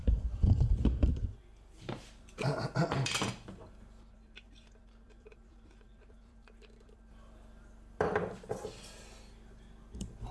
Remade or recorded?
remade